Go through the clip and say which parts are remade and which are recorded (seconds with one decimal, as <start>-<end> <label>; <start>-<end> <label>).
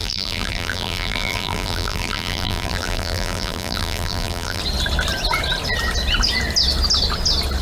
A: 0.0-4.6 remade; 4.6-7.6 recorded